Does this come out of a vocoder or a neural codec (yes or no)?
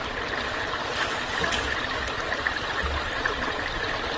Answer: no